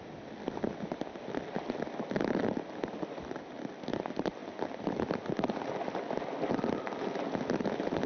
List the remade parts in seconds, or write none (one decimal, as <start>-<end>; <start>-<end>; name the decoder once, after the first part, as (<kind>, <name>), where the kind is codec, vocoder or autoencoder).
none